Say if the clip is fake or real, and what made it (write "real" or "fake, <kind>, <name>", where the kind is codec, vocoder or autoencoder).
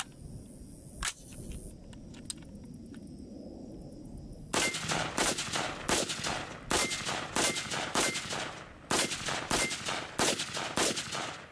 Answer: real